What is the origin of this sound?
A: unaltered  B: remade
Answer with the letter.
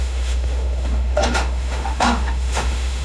B